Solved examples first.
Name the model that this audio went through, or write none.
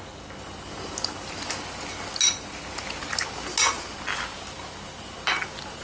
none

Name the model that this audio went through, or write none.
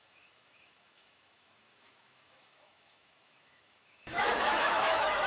autoencoder, DAC-VAE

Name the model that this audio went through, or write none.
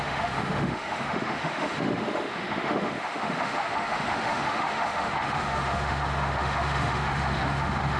autoencoder, DAC-VAE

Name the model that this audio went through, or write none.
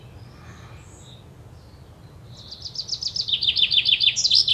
none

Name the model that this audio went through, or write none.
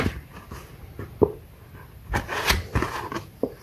none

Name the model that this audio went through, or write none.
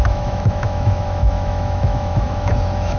autoencoder, DAC-VAE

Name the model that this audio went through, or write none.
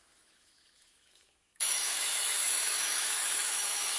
autoencoder, DAC-VAE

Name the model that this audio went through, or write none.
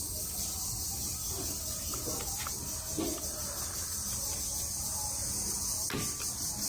none